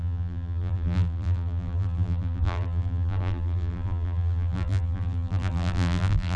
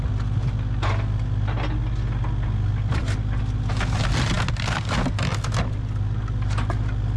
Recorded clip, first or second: second